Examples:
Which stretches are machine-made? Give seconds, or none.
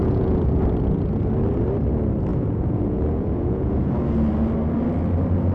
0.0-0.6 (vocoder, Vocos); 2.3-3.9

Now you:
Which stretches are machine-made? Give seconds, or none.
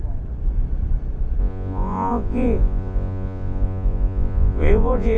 1.4-5.2 (vocoder, Vocos)